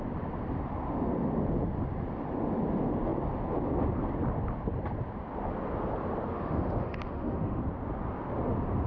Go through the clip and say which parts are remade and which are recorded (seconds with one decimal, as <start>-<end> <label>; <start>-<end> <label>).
0.0-6.3 recorded; 6.3-7.6 remade; 7.6-8.9 recorded